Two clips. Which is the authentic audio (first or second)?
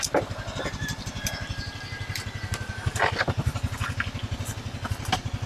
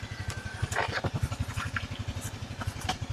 first